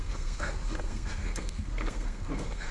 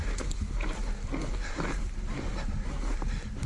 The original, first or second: second